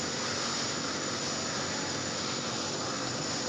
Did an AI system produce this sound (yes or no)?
no